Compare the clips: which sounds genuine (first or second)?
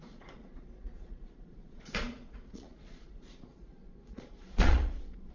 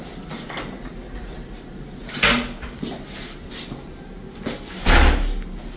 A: second